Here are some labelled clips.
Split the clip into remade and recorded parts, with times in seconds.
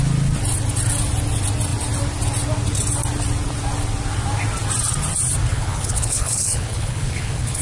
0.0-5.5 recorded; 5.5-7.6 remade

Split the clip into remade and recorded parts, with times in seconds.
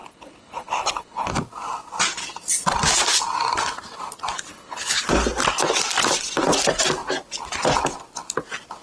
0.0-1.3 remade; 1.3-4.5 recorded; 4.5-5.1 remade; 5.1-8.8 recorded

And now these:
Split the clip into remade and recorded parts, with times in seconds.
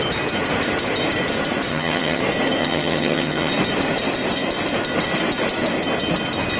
0.0-1.7 recorded; 1.7-2.2 remade; 2.2-2.6 recorded; 2.6-3.5 remade; 3.5-6.6 recorded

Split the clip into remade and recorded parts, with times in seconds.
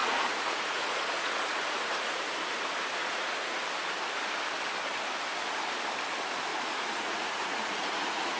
0.0-2.1 remade; 2.1-3.0 recorded; 3.0-3.6 remade; 3.6-6.5 recorded; 6.5-8.4 remade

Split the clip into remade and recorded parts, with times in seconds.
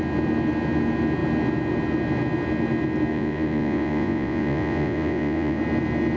0.0-3.1 recorded; 3.1-5.6 remade; 5.6-6.2 recorded